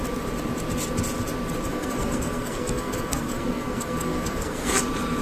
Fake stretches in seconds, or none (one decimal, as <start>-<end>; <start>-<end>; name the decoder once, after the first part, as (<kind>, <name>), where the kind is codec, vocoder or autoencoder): 1.7-4.8 (codec, SNAC)